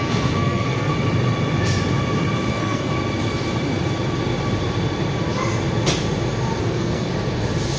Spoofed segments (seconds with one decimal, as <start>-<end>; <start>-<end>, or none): 0.0-0.9; 2.5-2.9; 6.6-7.1